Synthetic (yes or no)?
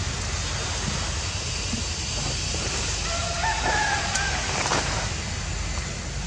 no